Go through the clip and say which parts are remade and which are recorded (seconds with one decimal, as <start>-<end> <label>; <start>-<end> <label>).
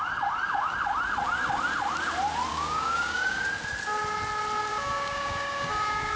0.0-2.5 recorded; 2.5-3.4 remade; 3.4-4.7 recorded; 4.7-6.2 remade